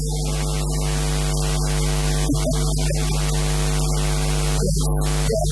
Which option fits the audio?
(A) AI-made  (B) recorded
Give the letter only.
B